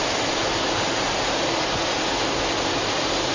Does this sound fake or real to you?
real